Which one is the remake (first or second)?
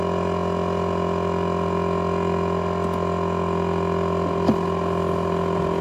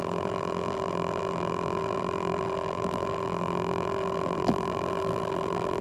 second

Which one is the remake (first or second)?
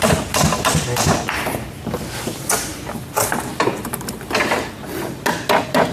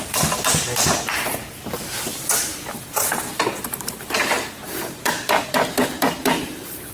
second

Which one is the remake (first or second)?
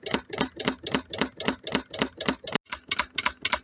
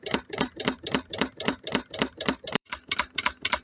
second